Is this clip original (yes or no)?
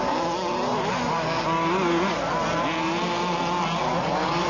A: yes